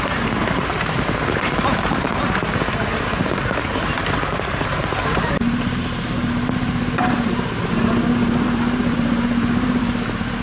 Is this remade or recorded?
remade